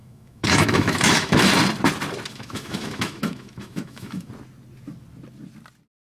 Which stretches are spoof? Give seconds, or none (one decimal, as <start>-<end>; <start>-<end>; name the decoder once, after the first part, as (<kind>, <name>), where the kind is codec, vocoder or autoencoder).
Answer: 0.0-1.5 (autoencoder, DAC-VAE); 2.3-4.3